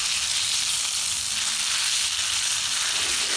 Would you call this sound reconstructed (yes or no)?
no